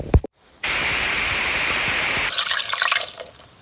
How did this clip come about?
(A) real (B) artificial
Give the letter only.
B